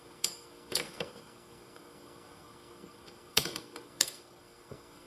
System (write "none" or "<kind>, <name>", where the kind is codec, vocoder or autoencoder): codec, SNAC